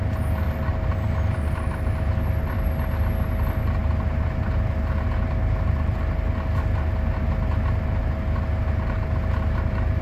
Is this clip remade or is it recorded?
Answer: recorded